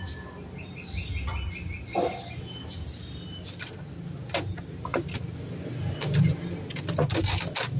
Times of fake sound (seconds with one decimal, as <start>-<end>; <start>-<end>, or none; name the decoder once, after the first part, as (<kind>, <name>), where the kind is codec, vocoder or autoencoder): none